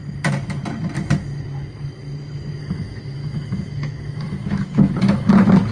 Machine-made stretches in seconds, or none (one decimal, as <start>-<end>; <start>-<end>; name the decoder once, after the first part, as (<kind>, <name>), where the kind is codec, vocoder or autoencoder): 2.6-5.3 (autoencoder, DAC-VAE)